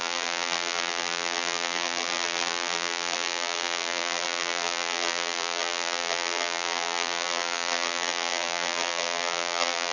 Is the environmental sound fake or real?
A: fake